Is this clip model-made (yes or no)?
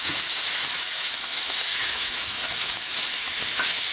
yes